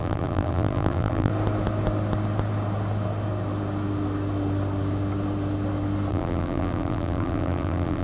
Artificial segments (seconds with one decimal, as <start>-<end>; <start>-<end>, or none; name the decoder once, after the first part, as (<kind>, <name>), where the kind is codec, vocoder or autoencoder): 0.0-1.3 (vocoder, BigVGAN v2); 6.1-8.0